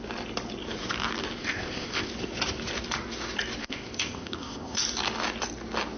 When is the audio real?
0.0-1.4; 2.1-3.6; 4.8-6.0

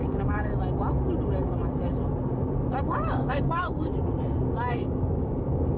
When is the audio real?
0.5-2.8; 3.9-4.7